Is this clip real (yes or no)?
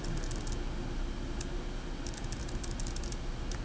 yes